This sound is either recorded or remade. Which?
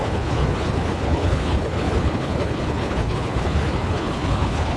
remade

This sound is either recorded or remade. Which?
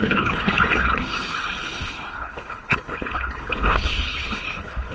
remade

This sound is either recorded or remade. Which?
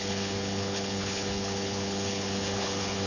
remade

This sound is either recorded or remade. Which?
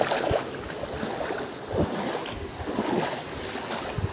recorded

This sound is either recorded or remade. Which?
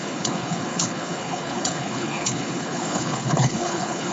remade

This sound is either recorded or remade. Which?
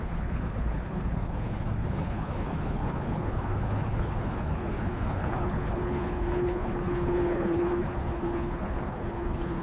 remade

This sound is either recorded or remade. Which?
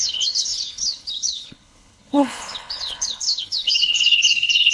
remade